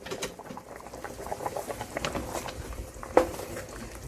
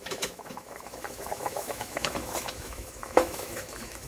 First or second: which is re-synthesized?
second